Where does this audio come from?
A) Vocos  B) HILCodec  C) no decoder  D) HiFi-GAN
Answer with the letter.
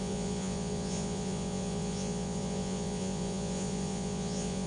A